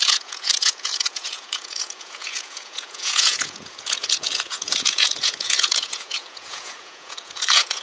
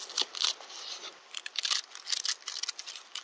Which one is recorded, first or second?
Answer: second